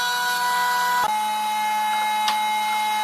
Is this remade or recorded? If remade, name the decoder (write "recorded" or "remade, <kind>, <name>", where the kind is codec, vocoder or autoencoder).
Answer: recorded